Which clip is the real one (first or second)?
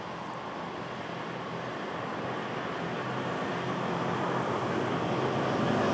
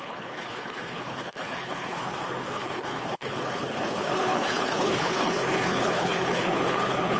first